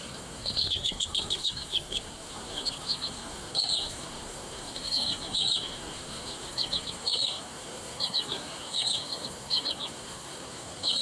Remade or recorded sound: remade